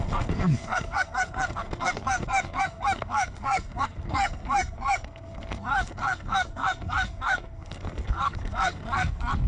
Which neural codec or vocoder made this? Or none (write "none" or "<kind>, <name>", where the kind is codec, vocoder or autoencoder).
codec, SNAC